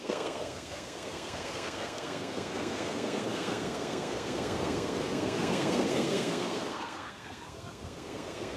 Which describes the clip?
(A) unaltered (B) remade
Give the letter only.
B